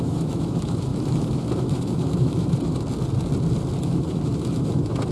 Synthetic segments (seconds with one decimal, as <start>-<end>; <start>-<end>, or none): 0.0-2.7; 3.8-5.1